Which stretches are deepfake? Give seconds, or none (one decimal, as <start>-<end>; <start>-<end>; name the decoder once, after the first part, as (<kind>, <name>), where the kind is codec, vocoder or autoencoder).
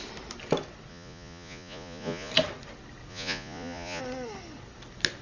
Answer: 0.9-2.3 (vocoder, Vocos); 3.1-4.0